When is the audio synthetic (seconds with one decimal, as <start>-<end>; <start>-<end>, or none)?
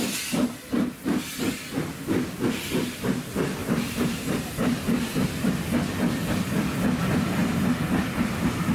3.6-5.5